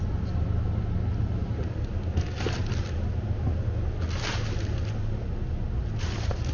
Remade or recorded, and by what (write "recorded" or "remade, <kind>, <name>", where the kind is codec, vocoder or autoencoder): recorded